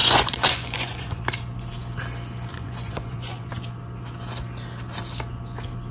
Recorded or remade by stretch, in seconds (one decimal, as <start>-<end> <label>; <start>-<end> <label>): 0.0-1.2 remade; 1.2-2.5 recorded; 2.5-3.5 remade; 3.5-5.9 recorded